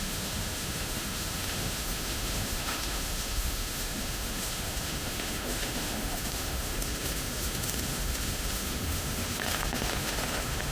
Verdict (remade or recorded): remade